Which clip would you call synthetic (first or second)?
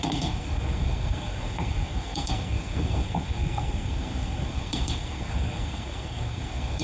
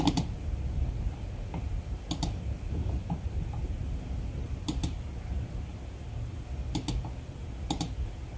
first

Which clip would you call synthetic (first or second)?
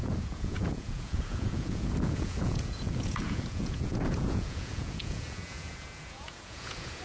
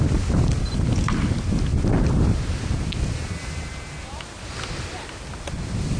first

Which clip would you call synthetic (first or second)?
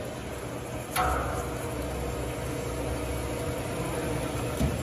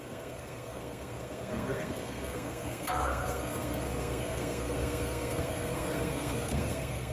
second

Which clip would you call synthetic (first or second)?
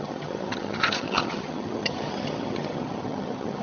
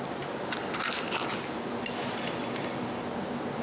first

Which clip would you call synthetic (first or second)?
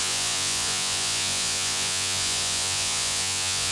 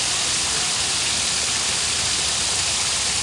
first